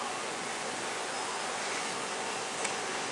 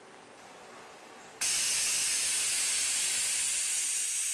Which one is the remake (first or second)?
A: first